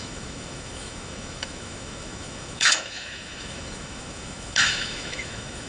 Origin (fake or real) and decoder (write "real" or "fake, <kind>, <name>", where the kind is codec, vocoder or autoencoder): fake, autoencoder, DAC-VAE